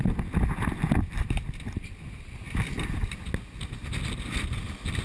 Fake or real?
real